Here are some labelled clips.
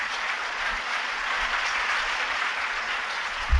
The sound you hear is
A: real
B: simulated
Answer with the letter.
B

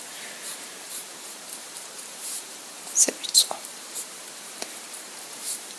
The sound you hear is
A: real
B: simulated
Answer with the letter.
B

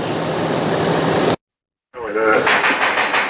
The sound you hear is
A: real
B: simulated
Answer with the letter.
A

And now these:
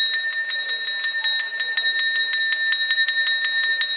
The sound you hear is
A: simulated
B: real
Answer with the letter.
B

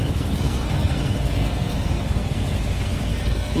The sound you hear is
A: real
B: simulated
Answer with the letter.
B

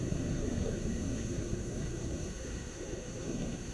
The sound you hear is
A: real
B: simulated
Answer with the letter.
B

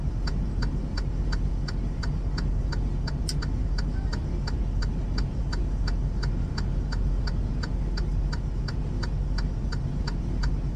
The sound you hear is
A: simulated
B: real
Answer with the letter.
B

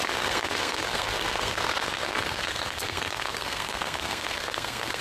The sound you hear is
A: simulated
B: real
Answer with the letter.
A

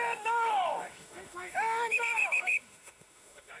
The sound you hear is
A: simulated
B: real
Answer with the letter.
A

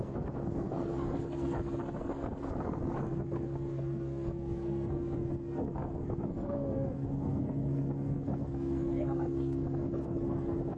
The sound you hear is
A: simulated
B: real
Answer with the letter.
A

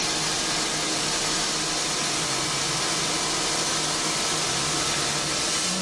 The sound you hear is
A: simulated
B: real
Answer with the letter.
B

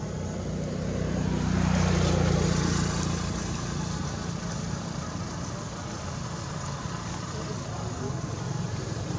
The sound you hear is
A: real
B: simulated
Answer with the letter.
A